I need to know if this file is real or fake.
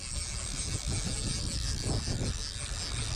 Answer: real